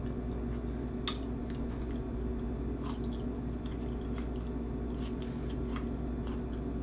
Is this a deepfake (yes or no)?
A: no